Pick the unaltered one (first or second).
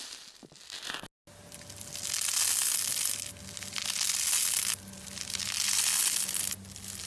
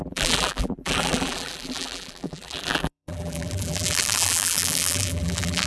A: first